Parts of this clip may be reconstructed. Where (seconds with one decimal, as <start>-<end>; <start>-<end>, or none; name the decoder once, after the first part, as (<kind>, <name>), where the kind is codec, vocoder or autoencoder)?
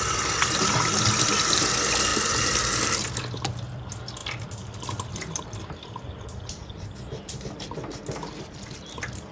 2.1-3.8 (vocoder, BigVGAN v2); 4.2-5.1